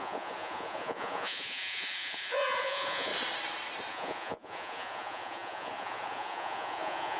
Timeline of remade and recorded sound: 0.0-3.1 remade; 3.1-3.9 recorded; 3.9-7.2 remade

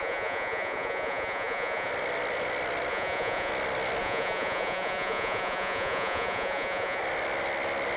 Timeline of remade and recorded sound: 0.0-1.9 remade; 1.9-2.9 recorded; 2.9-3.5 remade; 3.5-4.0 recorded; 4.0-7.0 remade; 7.0-8.0 recorded

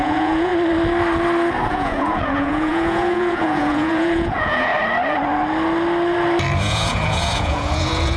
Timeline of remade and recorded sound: 0.0-0.5 remade; 0.5-1.7 recorded; 1.7-4.7 remade; 4.7-6.6 recorded; 6.6-8.2 remade

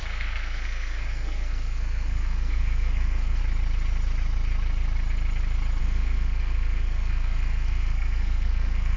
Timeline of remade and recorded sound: 0.0-3.4 remade; 3.4-5.8 recorded; 5.8-9.0 remade

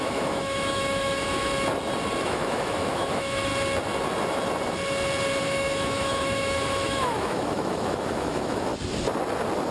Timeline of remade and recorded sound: 0.0-1.5 remade; 1.5-2.2 recorded; 2.2-3.5 remade; 3.5-5.4 recorded; 5.4-8.7 remade; 8.7-9.7 recorded

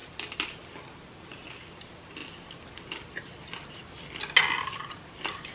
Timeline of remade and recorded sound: 0.0-5.5 recorded